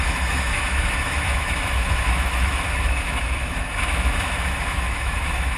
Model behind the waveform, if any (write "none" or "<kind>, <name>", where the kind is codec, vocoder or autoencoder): autoencoder, DAC-VAE